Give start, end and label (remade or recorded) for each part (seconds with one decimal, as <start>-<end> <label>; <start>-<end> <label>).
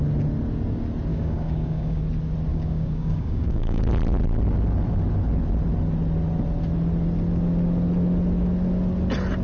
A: 0.0-1.1 recorded; 1.1-2.0 remade; 2.0-2.5 recorded; 2.5-3.8 remade; 3.8-9.4 recorded